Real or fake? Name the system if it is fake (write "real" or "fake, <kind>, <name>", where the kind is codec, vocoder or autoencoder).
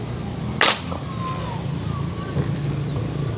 real